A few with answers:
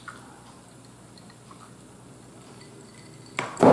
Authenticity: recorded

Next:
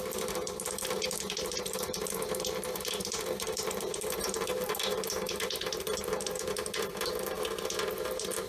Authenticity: remade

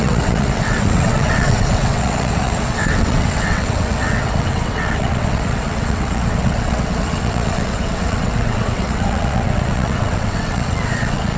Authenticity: remade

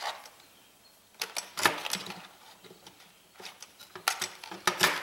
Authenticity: recorded